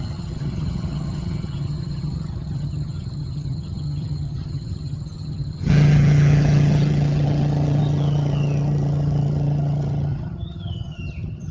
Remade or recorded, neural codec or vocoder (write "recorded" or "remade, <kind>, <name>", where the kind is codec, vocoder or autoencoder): remade, vocoder, HiFi-GAN